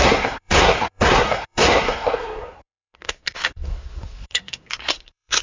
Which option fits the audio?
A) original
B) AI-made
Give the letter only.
B